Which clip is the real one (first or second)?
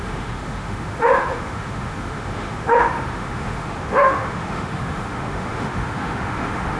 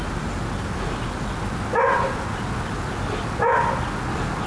second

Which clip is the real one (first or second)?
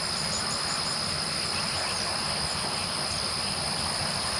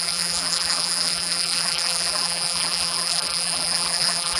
first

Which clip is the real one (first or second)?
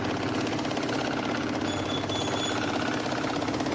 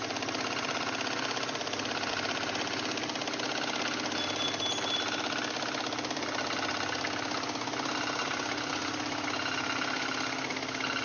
second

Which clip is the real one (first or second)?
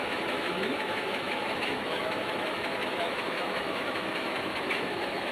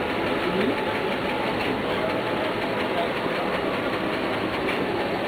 second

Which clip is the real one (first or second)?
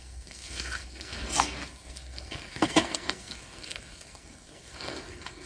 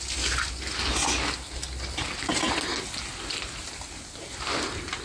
second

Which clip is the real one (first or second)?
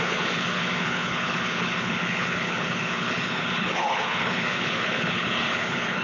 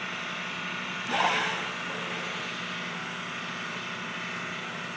second